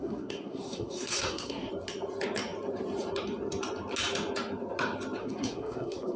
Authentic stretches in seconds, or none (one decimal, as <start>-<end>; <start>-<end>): 1.7-5.2